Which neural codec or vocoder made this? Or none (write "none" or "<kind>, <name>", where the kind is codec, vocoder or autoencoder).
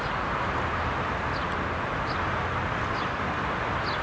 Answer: none